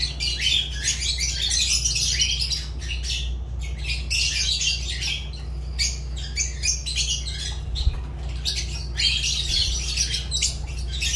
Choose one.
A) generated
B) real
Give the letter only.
B